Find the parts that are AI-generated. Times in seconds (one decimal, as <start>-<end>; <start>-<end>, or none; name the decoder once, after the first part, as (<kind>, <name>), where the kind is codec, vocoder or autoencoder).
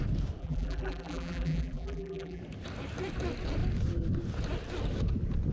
0.4-2.4 (vocoder, BigVGAN v2)